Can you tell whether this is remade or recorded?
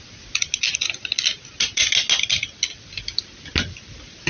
recorded